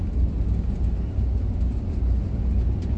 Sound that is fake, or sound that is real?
real